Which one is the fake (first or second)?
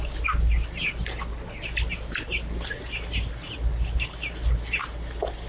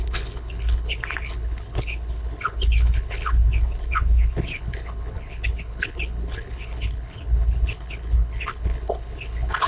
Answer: second